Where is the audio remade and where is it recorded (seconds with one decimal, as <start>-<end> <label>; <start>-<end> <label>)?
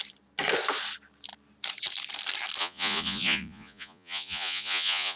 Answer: 0.0-2.6 recorded; 2.6-5.2 remade